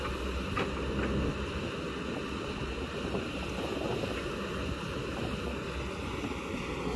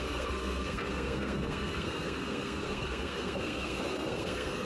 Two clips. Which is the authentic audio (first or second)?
first